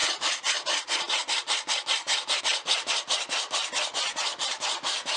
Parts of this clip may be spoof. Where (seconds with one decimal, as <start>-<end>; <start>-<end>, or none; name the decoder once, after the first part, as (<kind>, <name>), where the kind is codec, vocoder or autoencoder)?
3.9-4.4 (vocoder, Vocos)